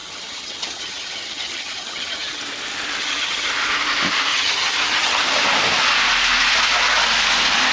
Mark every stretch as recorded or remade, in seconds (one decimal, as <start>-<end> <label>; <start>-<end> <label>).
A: 0.0-2.4 remade; 2.4-3.0 recorded; 3.0-3.5 remade; 3.5-4.3 recorded; 4.3-5.2 remade; 5.2-7.7 recorded